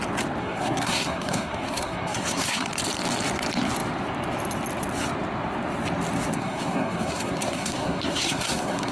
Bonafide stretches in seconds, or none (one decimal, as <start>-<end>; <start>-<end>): 0.0-0.4; 2.7-6.3